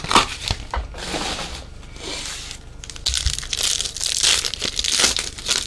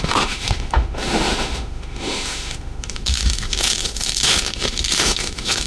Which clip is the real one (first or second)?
first